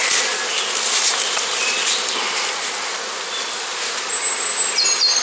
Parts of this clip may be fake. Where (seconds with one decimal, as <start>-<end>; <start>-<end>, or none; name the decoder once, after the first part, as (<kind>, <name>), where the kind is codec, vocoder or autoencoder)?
none